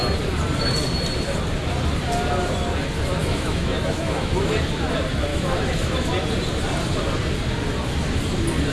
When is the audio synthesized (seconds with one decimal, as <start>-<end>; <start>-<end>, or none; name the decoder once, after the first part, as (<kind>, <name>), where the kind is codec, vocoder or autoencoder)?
3.2-4.5 (autoencoder, DAC-VAE); 5.3-6.1